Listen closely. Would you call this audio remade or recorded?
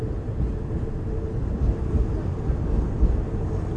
recorded